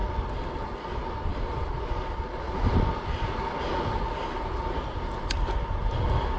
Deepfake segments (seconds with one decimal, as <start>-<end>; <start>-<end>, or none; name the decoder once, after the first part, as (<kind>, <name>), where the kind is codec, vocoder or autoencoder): none